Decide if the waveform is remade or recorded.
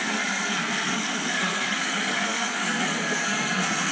remade